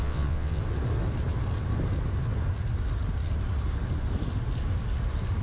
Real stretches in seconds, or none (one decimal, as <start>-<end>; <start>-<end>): 0.6-5.4